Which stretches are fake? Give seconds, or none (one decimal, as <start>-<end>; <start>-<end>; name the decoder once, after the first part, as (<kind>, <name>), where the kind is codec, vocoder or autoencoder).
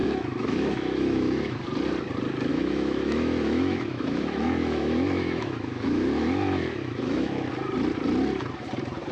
0.0-1.6 (autoencoder, DAC-VAE); 2.5-7.5